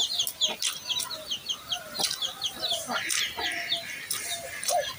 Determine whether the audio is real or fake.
real